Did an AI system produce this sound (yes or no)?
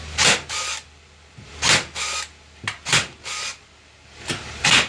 no